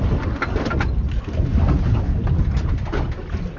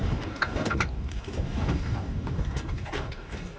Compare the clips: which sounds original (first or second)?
first